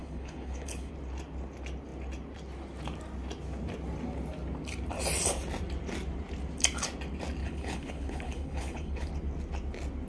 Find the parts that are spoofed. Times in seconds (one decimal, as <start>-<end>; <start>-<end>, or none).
0.0-0.9; 7.4-9.1